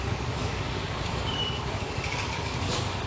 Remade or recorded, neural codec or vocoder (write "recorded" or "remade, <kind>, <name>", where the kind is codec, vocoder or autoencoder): remade, codec, DAC